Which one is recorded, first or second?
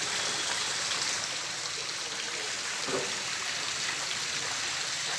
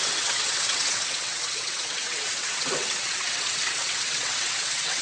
first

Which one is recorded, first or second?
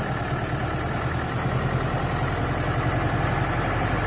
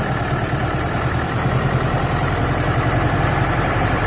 first